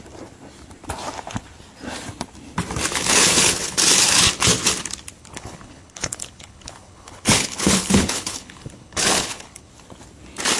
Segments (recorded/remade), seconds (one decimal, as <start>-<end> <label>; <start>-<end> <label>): 0.0-2.9 recorded; 2.9-3.8 remade; 3.8-5.2 recorded; 5.2-9.7 remade; 9.7-10.6 recorded